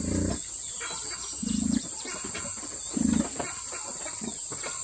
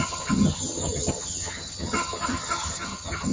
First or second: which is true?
first